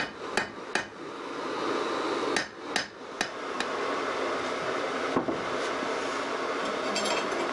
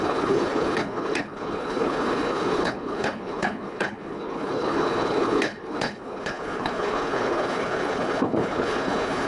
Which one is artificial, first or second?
second